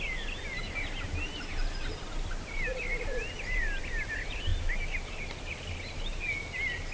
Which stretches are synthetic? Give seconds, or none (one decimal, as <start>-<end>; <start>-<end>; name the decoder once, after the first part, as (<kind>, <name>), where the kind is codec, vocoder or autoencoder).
2.7-3.8 (vocoder, BigVGAN v2); 4.5-6.1